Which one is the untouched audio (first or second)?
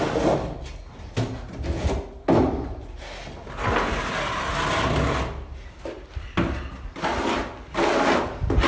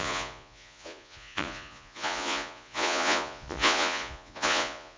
first